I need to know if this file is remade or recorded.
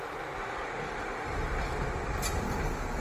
recorded